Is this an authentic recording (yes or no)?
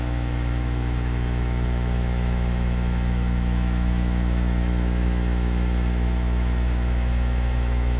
no